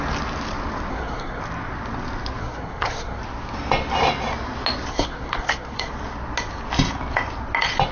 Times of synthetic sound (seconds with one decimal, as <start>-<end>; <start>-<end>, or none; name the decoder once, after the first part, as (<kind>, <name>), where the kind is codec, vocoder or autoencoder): 0.9-1.4 (codec, SNAC); 2.4-3.2; 4.9-5.9